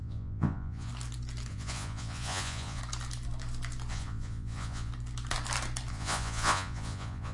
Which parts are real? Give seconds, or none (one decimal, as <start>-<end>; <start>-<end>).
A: 0.9-1.5; 2.8-3.9; 4.9-5.9